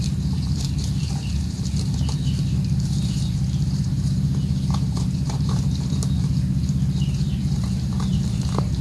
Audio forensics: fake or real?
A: fake